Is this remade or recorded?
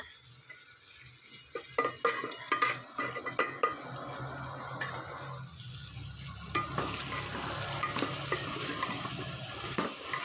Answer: recorded